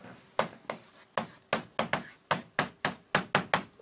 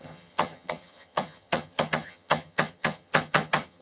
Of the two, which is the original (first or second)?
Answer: first